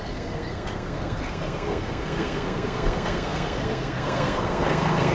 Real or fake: fake